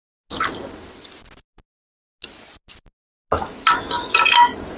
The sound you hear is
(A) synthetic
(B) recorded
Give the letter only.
B